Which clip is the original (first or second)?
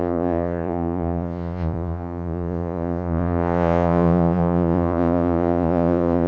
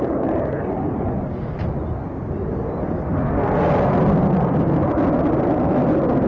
second